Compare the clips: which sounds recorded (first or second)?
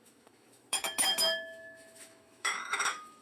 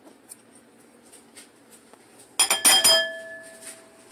second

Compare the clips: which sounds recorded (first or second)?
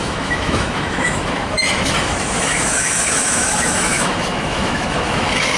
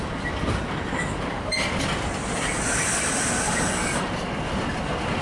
second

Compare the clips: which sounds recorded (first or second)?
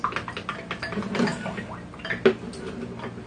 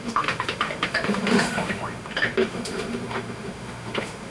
first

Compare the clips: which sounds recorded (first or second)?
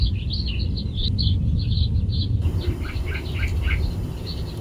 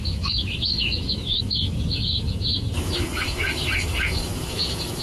first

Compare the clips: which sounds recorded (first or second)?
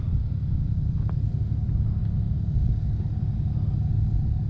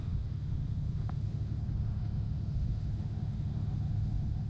first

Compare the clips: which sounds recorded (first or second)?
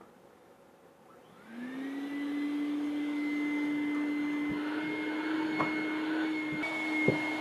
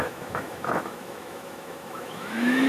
first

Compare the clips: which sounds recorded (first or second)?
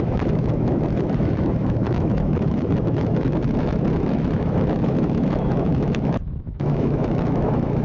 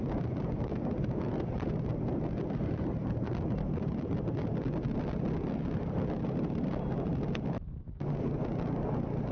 second